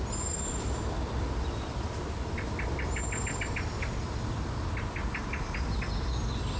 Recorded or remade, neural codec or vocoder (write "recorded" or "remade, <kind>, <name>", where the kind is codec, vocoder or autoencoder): recorded